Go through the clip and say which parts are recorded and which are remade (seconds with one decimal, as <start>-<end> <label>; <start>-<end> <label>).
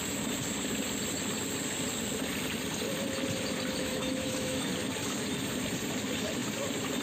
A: 0.0-3.8 recorded; 3.8-4.7 remade; 4.7-7.0 recorded